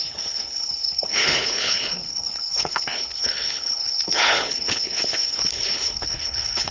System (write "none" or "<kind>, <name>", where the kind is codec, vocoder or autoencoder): codec, HILCodec